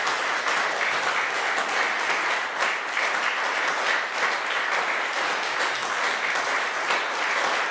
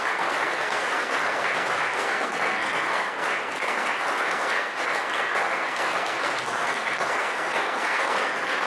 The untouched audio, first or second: first